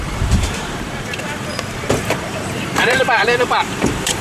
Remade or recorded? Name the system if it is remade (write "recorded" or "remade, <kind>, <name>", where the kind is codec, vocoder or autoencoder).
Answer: remade, vocoder, BigVGAN v2